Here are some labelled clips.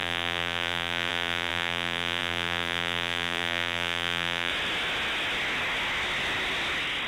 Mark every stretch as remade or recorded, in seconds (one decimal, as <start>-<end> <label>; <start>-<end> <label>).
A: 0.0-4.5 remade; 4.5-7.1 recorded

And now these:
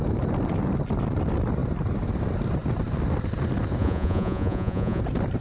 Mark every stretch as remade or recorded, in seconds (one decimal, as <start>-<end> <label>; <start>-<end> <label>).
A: 0.0-3.8 recorded; 3.8-5.0 remade; 5.0-5.4 recorded

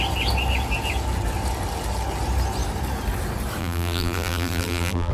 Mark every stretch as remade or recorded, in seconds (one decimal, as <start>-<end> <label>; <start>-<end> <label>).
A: 0.0-3.6 recorded; 3.6-5.1 remade